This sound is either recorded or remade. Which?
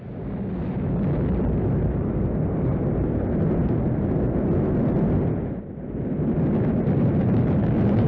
recorded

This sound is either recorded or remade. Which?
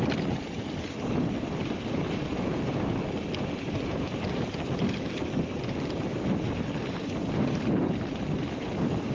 remade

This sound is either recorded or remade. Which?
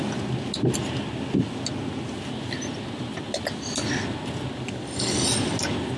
recorded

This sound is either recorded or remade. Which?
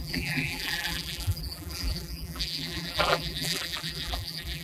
remade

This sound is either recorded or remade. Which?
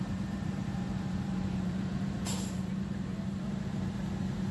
remade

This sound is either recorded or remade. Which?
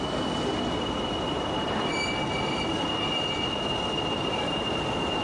recorded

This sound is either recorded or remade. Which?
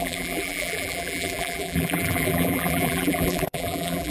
remade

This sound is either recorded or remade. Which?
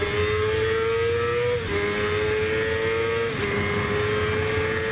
recorded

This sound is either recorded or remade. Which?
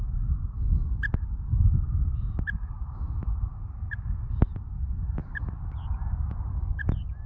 recorded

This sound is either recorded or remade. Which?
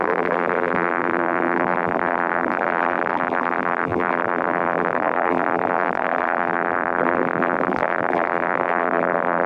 remade